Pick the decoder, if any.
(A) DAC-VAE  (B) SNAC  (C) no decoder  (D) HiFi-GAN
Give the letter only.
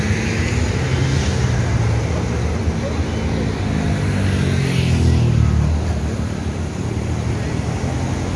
C